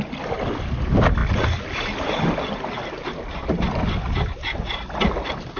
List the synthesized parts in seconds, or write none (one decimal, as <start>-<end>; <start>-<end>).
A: none